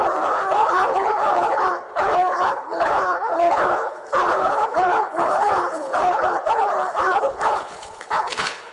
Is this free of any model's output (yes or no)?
no